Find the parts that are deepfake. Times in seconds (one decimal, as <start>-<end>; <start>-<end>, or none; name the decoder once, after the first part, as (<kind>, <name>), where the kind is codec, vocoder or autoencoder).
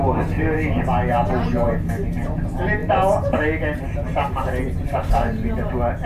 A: none